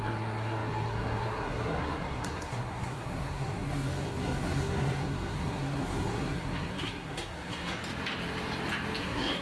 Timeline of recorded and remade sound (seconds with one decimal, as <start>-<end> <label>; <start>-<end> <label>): 0.0-7.8 remade; 7.8-9.0 recorded; 9.0-9.4 remade